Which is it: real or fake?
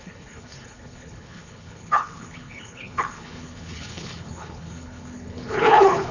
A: fake